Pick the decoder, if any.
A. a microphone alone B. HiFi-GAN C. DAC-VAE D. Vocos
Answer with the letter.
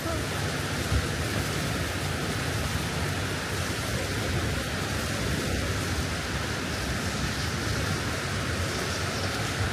A